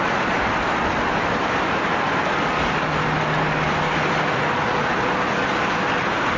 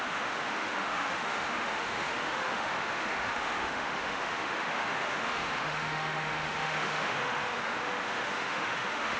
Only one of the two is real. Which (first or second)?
first